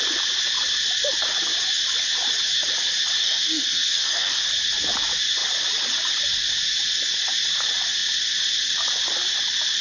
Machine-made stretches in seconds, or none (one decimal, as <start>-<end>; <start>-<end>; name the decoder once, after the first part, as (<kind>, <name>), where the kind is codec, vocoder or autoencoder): 3.2-4.4 (codec, SNAC)